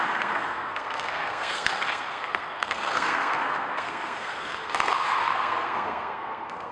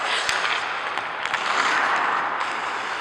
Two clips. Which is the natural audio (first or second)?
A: second